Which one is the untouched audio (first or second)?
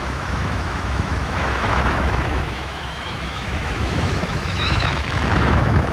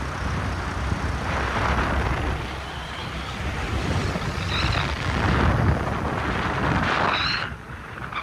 second